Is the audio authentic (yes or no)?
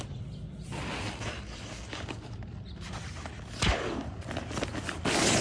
yes